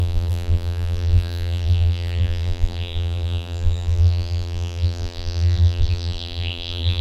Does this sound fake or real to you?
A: fake